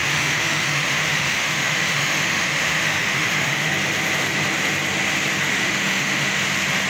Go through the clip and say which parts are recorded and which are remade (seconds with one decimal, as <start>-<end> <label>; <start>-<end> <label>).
0.0-3.7 remade; 3.7-5.5 recorded; 5.5-6.4 remade; 6.4-6.9 recorded